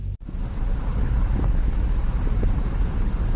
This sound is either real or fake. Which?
real